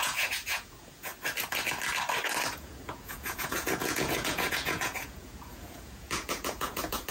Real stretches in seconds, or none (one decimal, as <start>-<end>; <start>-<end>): 1.1-2.5